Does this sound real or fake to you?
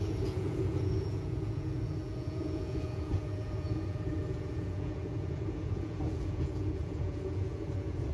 fake